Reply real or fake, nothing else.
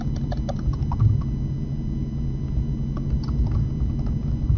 real